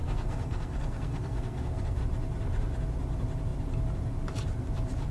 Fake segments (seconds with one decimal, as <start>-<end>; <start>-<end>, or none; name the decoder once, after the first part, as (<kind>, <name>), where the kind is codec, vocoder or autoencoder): 0.0-2.0 (codec, SNAC)